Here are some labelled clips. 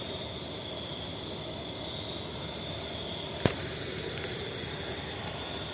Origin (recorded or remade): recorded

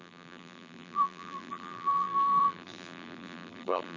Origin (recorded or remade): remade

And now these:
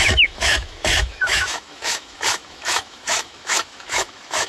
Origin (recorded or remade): remade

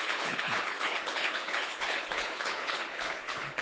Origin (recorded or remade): remade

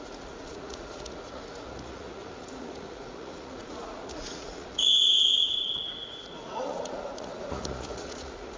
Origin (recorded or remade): remade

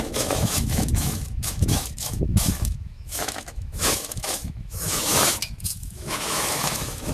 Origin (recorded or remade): remade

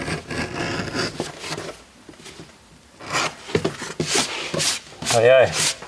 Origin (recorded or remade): recorded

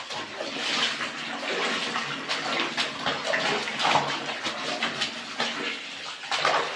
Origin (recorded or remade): recorded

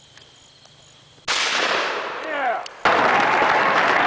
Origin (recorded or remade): recorded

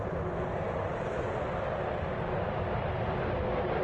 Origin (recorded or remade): recorded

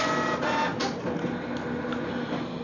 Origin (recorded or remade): recorded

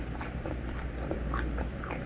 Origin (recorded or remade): remade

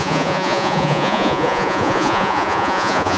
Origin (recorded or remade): remade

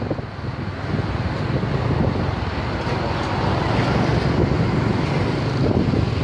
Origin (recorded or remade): recorded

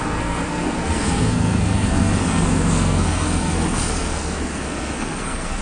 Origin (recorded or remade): remade